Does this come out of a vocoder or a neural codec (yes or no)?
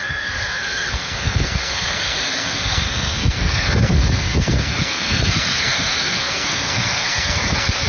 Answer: yes